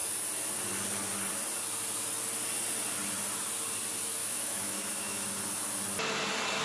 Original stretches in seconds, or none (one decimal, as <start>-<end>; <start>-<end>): 0.0-4.2; 5.3-6.6